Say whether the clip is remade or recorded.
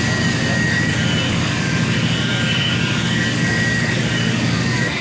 remade